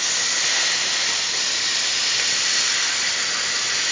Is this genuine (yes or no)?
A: yes